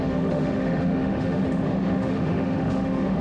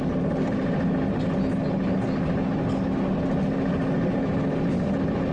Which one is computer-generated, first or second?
first